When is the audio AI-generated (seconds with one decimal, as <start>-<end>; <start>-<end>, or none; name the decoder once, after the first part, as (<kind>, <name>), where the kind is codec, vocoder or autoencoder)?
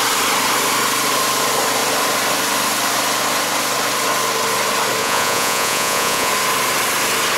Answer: 5.0-6.3 (vocoder, Vocos)